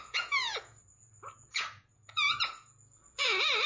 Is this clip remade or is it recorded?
remade